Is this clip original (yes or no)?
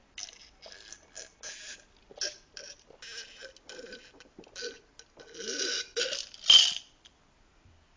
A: yes